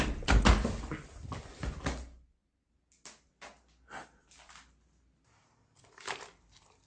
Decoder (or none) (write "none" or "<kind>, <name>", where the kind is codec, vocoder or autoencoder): none